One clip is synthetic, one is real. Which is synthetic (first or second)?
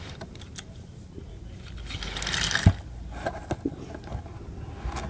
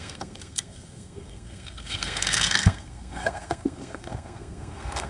second